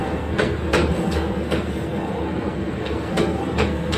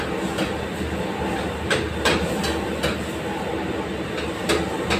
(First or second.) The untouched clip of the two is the second